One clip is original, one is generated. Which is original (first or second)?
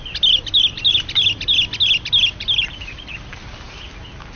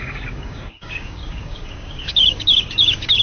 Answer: first